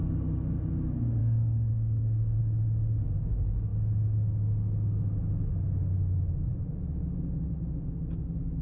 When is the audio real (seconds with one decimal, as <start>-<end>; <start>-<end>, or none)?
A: 0.0-1.2; 2.4-8.6